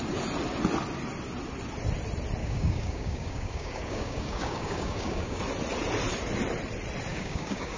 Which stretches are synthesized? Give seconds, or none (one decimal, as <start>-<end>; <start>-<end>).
2.4-5.4; 7.1-7.8